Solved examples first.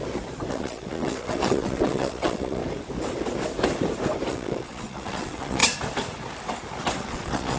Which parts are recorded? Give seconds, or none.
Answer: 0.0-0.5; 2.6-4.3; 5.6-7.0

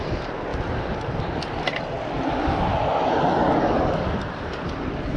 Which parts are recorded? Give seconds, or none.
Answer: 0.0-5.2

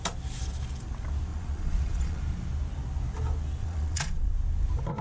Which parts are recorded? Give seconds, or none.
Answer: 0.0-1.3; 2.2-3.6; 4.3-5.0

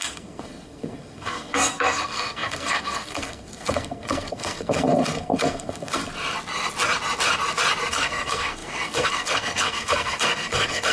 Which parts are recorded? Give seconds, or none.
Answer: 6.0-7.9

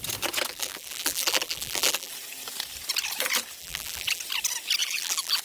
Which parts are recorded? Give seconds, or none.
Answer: 0.0-0.5; 2.1-3.6; 4.2-4.8

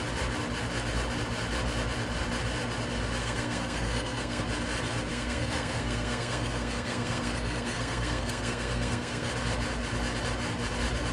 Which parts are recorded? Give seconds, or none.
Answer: 0.0-3.2; 4.4-5.1; 9.3-11.1

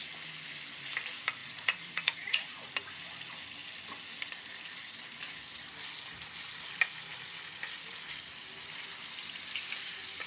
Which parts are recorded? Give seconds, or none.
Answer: 0.0-1.4; 2.7-10.3